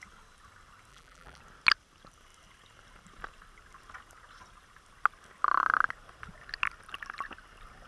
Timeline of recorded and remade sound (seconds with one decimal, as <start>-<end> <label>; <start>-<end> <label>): 0.0-0.9 recorded; 0.9-1.4 remade; 1.4-7.9 recorded